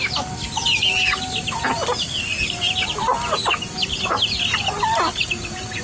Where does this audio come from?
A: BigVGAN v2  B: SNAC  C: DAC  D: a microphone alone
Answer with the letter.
D